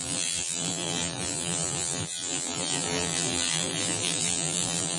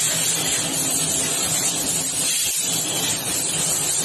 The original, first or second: second